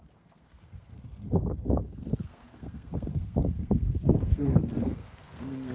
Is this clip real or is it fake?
fake